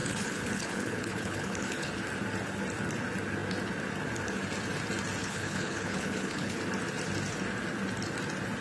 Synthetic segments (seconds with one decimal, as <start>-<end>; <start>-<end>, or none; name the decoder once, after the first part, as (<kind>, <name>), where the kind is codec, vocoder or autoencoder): 0.0-1.9 (codec, HILCodec); 5.2-6.6